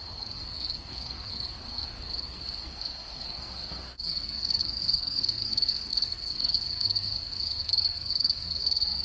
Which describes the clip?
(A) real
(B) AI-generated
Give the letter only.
B